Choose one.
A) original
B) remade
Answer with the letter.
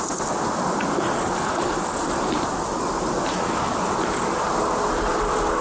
A